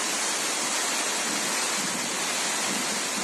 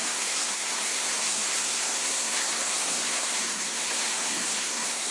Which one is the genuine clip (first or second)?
first